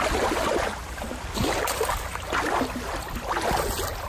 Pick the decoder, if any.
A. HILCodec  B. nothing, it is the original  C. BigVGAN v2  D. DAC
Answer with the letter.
B